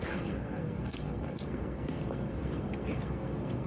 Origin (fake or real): fake